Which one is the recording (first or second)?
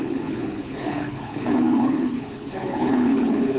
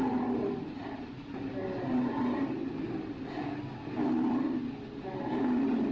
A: second